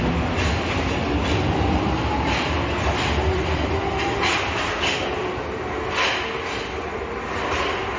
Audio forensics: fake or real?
real